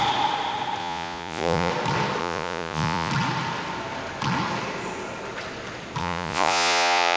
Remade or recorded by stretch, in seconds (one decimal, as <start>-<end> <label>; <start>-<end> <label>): 0.0-0.8 recorded; 0.8-1.7 remade; 1.7-2.2 recorded; 2.2-3.1 remade; 3.1-6.0 recorded; 6.0-7.2 remade

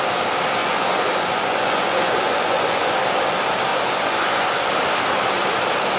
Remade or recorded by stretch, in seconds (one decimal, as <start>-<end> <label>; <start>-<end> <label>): 0.0-0.6 recorded; 0.6-3.0 remade; 3.0-3.7 recorded; 3.7-4.7 remade; 4.7-6.0 recorded

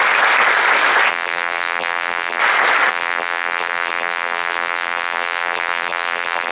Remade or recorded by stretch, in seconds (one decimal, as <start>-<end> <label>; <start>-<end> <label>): 0.0-1.1 recorded; 1.1-2.4 remade; 2.4-2.9 recorded; 2.9-6.5 remade

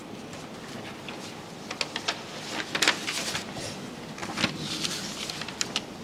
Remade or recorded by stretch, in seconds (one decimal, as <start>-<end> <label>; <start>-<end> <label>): 0.0-6.0 recorded

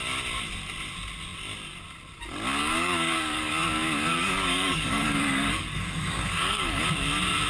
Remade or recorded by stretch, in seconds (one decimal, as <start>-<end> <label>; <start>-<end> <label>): 0.0-2.6 recorded; 2.6-3.5 remade; 3.5-4.1 recorded; 4.1-6.8 remade; 6.8-7.5 recorded

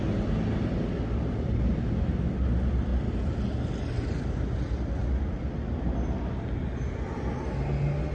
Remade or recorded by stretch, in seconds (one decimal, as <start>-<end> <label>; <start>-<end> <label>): 0.0-8.1 recorded

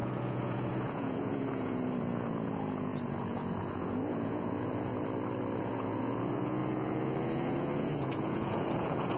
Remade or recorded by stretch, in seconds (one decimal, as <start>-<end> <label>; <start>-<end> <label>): 0.0-4.9 remade; 4.9-5.6 recorded; 5.6-9.2 remade

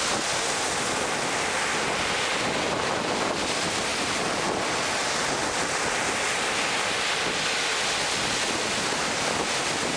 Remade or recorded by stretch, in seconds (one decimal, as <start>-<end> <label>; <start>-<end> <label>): 0.0-10.0 recorded